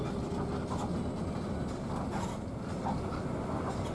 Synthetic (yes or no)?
no